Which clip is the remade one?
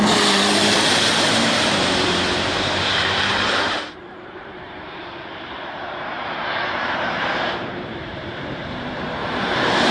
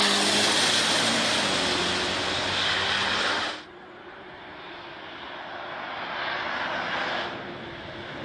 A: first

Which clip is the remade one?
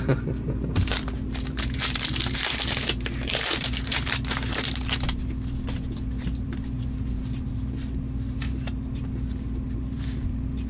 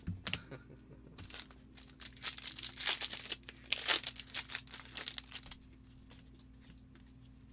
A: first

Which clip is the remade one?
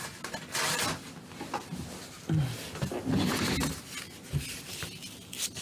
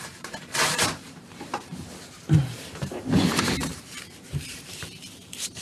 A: second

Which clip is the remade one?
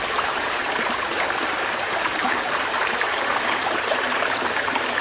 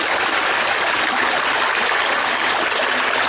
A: first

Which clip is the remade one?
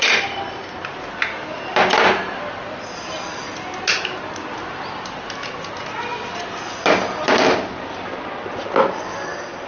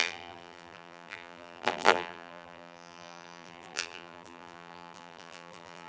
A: second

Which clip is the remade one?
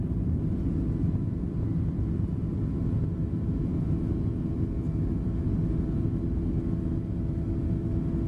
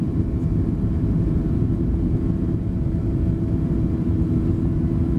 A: second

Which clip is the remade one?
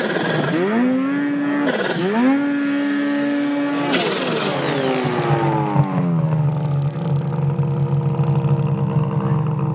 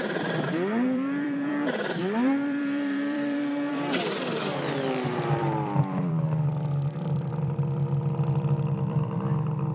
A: second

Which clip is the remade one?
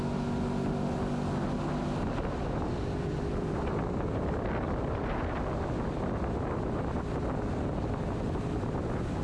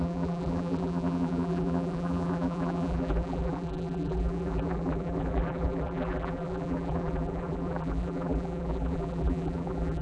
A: second